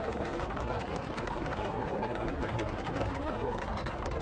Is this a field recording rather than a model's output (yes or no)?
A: no